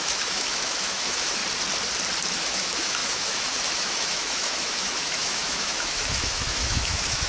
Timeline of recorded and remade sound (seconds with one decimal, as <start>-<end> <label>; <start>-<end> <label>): 0.0-1.4 remade; 1.4-2.4 recorded; 2.4-7.3 remade